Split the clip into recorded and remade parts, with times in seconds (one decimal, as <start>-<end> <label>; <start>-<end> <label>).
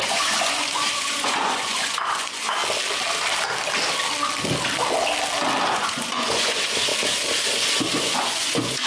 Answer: 0.0-2.6 remade; 2.6-5.7 recorded; 5.7-6.9 remade; 6.9-8.0 recorded; 8.0-8.9 remade